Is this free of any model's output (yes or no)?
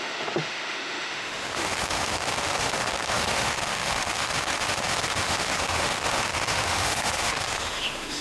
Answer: no